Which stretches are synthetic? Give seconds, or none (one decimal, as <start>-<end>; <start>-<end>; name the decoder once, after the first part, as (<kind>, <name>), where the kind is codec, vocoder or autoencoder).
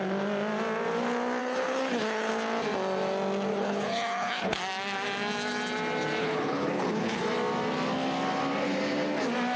1.4-2.3 (codec, HILCodec); 3.5-4.6; 6.2-7.2